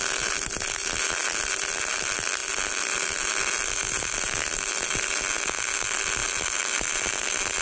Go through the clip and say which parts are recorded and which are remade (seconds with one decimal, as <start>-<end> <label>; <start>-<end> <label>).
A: 0.0-7.6 recorded